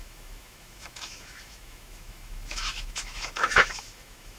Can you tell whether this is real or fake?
fake